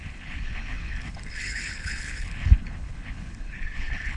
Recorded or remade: remade